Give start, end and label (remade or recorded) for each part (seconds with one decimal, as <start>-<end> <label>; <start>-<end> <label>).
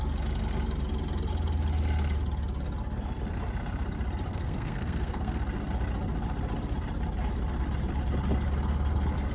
0.0-4.3 recorded; 4.3-5.4 remade; 5.4-9.3 recorded